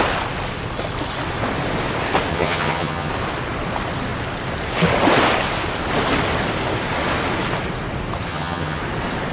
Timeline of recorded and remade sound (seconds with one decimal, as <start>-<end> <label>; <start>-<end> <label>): 0.0-2.3 recorded; 2.3-3.1 remade; 3.1-8.3 recorded; 8.3-8.8 remade; 8.8-9.3 recorded